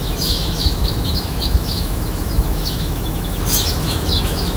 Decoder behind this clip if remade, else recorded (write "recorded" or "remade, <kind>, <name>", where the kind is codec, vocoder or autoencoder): remade, autoencoder, DAC-VAE